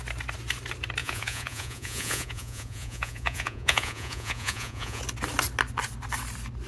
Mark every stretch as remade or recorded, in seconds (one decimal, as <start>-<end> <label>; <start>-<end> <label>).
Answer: 0.0-1.0 recorded; 1.0-5.0 remade; 5.0-6.7 recorded